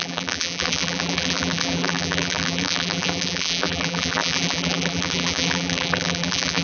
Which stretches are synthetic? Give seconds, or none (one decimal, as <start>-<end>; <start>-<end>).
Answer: 0.0-6.6